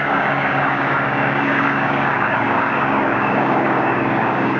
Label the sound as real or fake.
fake